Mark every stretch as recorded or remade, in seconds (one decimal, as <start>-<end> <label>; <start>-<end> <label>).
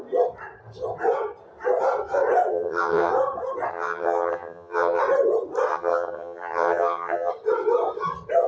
0.0-2.5 recorded; 2.5-3.1 remade; 3.1-3.7 recorded; 3.7-5.0 remade; 5.0-5.7 recorded; 5.7-7.3 remade; 7.3-8.5 recorded